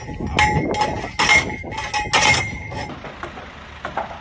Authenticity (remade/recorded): recorded